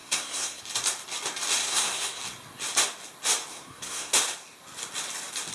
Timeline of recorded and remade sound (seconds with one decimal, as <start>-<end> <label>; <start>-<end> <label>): 0.0-0.6 remade; 0.6-1.6 recorded; 1.6-2.2 remade; 2.2-3.5 recorded; 3.5-4.1 remade; 4.1-5.5 recorded

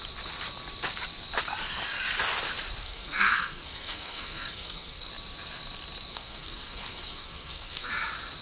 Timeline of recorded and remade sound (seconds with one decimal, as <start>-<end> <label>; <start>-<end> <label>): 0.0-2.8 recorded; 2.8-5.1 remade; 5.1-6.1 recorded; 6.1-7.9 remade; 7.9-8.4 recorded

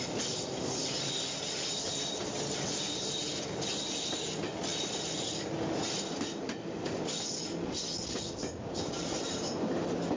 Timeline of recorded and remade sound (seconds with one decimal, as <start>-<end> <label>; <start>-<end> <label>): 0.0-10.2 recorded

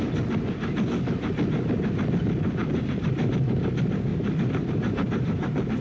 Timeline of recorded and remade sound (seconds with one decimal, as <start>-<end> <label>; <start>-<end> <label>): 0.0-2.6 recorded; 2.6-3.3 remade; 3.3-4.1 recorded; 4.1-5.8 remade